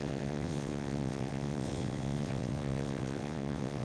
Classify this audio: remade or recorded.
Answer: remade